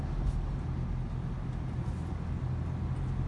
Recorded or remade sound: recorded